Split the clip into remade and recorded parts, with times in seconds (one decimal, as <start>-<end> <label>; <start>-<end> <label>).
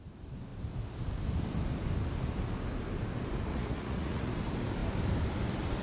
0.0-3.5 recorded; 3.5-4.3 remade; 4.3-5.8 recorded